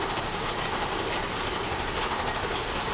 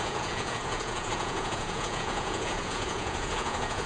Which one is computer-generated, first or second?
second